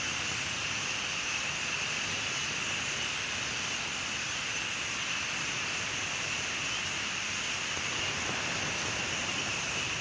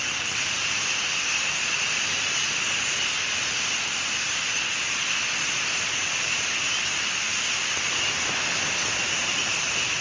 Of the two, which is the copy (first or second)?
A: first